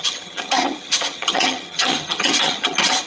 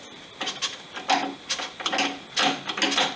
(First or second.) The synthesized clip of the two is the first